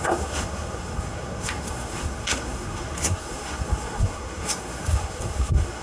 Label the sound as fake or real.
fake